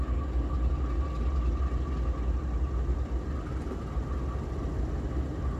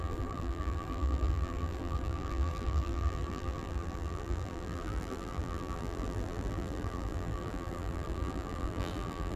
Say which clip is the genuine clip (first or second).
first